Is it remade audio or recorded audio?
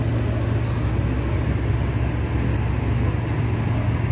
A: recorded